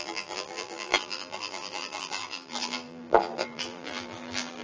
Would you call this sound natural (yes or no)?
no